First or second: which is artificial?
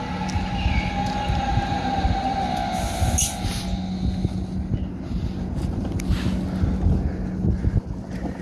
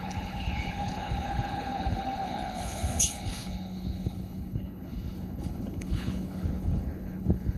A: second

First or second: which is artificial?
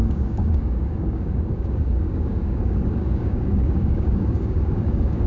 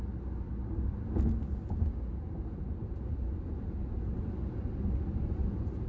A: first